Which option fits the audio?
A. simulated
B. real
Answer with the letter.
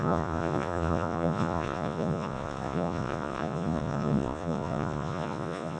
A